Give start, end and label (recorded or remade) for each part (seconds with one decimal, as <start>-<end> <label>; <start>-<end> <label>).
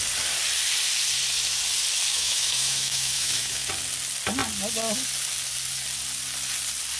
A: 0.0-2.1 recorded; 2.1-3.7 remade; 3.7-7.0 recorded